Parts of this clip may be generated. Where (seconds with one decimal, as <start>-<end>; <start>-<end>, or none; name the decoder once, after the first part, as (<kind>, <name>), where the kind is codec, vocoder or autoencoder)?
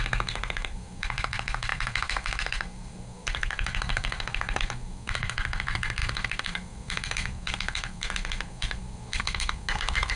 0.0-10.2 (codec, SNAC)